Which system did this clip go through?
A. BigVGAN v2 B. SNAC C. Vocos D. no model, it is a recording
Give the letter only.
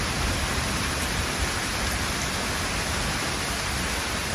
D